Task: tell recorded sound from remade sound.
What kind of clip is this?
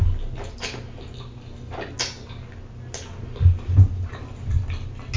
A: recorded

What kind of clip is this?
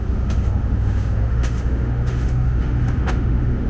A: remade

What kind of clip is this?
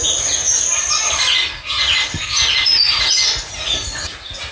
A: recorded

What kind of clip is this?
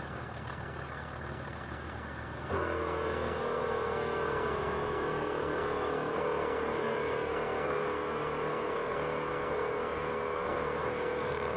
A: remade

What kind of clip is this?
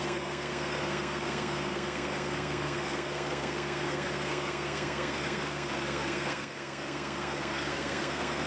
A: remade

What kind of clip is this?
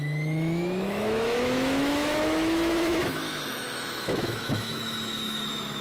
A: remade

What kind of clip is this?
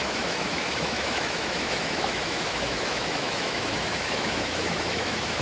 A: remade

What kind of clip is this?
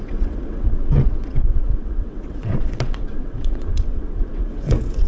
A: remade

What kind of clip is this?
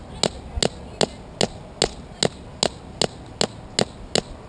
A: recorded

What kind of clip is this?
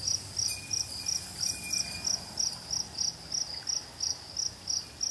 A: recorded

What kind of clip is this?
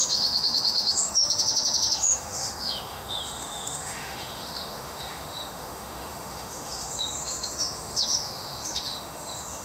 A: remade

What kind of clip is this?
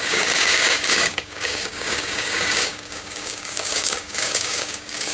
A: remade